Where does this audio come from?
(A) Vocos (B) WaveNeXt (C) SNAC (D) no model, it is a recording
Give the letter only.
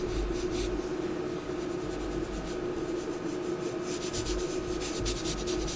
D